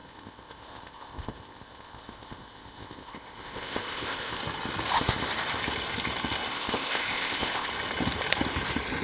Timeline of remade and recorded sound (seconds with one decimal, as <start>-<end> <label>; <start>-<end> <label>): 0.0-4.4 remade; 4.4-6.5 recorded; 6.5-7.7 remade; 7.7-9.0 recorded